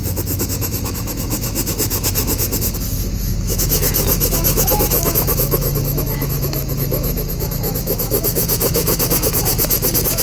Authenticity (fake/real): fake